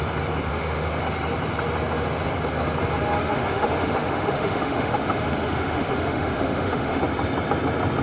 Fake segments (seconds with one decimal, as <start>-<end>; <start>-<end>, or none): 0.5-1.0; 3.2-7.0